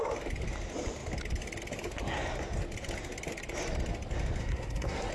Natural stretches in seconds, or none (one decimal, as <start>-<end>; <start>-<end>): 0.0-4.4